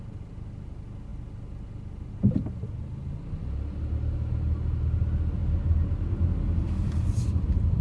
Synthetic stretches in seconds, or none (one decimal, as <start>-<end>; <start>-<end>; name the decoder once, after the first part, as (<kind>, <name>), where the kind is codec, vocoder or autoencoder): none